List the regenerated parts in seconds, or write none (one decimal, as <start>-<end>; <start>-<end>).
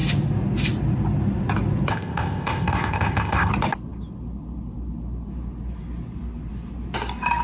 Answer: 1.9-3.5